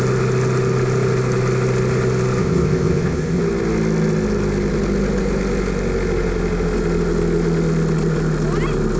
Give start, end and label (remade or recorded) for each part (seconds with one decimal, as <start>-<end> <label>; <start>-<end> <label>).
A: 0.0-2.4 recorded; 2.4-3.4 remade; 3.4-9.0 recorded